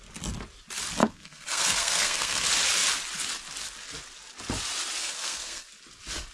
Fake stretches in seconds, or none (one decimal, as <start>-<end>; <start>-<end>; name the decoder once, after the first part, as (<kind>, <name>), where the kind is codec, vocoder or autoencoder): 1.0-2.4 (codec, SNAC); 5.0-5.7